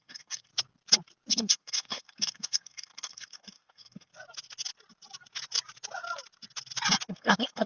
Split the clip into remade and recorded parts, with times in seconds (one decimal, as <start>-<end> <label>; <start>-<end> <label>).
0.0-0.5 remade; 0.5-1.3 recorded; 1.3-4.1 remade; 4.1-7.1 recorded; 7.1-7.7 remade